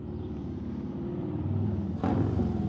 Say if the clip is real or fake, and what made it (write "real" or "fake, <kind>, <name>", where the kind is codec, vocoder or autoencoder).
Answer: fake, vocoder, BigVGAN v2